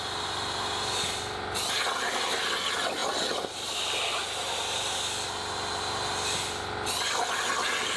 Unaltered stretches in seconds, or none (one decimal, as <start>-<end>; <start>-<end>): 0.0-8.0